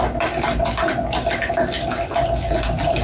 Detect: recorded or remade recorded